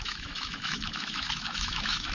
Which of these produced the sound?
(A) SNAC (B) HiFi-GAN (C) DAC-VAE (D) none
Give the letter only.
C